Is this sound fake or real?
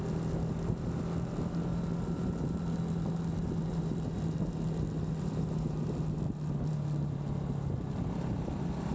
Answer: real